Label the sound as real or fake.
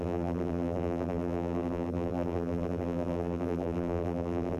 fake